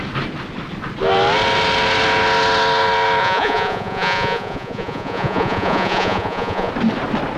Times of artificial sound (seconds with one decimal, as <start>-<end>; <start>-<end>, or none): 3.2-6.7